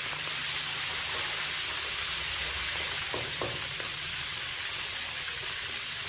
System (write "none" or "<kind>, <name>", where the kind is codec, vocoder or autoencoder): none